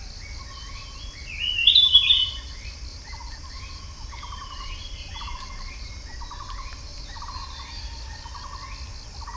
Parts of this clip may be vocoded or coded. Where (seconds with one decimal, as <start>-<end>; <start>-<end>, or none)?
1.6-2.5; 2.9-5.9; 6.9-7.7